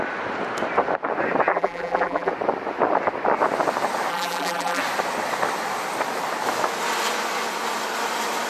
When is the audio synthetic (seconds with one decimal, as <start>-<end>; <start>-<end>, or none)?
1.5-2.3; 4.1-4.8